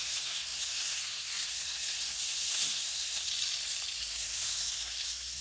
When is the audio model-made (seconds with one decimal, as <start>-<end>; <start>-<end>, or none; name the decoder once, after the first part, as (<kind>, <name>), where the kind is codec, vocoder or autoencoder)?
0.0-3.3 (codec, SNAC); 4.0-5.4